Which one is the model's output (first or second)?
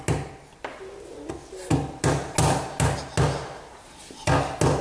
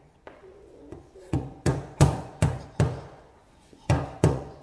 second